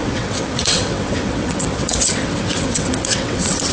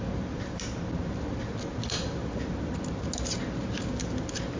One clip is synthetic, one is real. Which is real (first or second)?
second